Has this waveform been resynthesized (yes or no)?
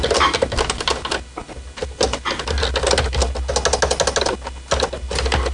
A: no